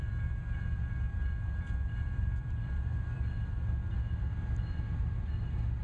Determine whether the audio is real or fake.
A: fake